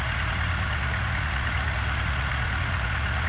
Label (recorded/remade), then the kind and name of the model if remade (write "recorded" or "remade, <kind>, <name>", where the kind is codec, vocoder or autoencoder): remade, vocoder, Vocos